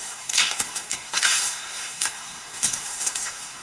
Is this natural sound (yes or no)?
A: no